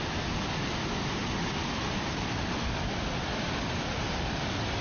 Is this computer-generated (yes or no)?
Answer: no